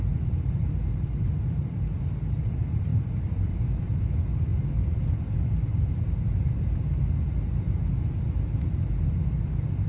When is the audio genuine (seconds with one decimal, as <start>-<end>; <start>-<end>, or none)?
0.0-0.8; 2.0-2.9; 3.5-4.5; 6.6-9.9